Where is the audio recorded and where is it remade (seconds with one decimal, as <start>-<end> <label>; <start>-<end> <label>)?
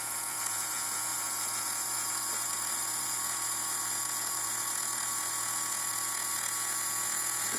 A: 0.0-7.6 remade